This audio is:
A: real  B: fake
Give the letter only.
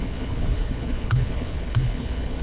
B